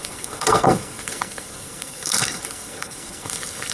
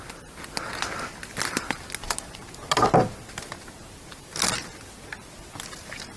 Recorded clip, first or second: second